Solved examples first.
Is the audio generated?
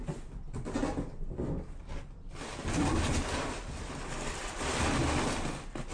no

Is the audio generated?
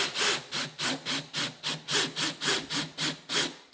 no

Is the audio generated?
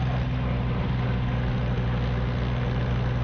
no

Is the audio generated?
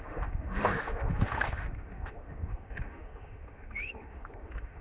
yes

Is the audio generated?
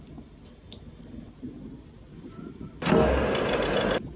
no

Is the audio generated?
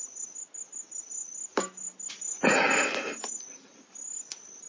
no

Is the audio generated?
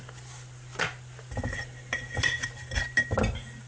no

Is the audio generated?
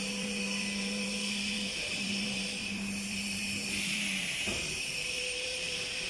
yes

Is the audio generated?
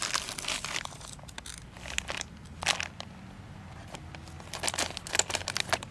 no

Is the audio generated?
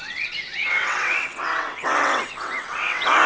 yes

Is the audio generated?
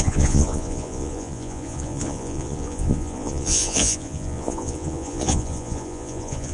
yes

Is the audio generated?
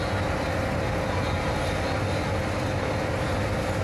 no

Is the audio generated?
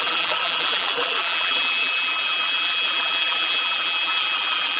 yes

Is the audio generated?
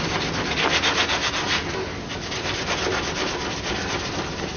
no